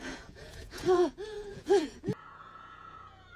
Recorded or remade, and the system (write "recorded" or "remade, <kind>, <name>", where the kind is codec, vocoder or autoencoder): remade, vocoder, Vocos